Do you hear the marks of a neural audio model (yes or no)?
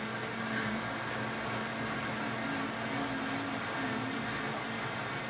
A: no